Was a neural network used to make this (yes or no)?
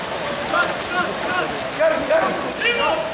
no